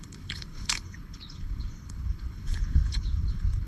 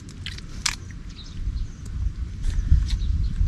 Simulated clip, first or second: first